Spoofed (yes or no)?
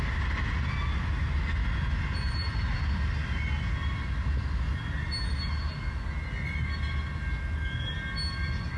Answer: no